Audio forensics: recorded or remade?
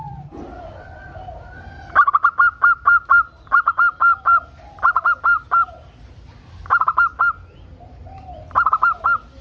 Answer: remade